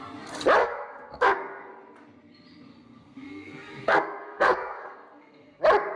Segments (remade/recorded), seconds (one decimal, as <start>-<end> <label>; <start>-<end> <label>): 0.0-0.6 recorded; 0.6-1.7 remade; 1.7-2.7 recorded; 2.7-5.6 remade; 5.6-6.0 recorded